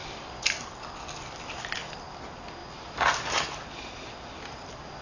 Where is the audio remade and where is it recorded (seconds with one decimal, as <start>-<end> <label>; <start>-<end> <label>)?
0.0-5.0 recorded